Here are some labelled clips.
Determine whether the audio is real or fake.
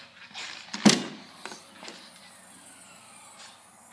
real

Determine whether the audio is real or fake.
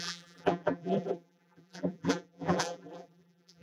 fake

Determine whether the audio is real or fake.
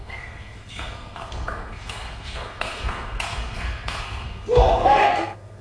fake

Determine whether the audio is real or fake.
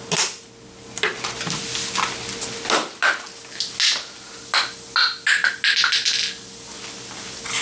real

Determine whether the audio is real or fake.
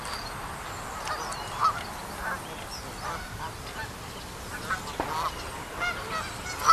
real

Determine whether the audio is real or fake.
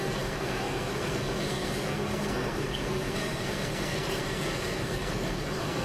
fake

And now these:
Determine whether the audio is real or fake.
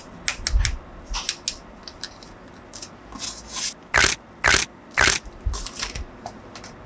real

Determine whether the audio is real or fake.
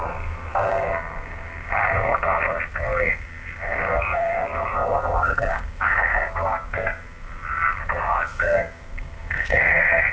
fake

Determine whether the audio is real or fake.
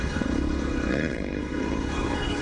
fake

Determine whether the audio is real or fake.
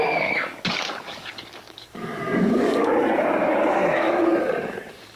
fake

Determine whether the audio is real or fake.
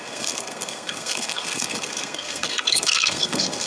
fake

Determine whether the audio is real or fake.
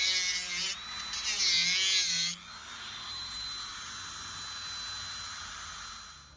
real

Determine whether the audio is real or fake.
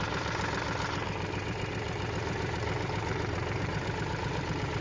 fake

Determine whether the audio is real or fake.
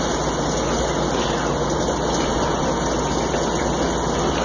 real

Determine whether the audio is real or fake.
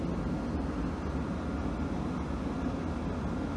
real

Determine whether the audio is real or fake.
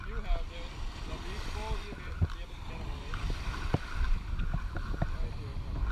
real